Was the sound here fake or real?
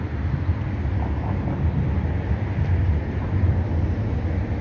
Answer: real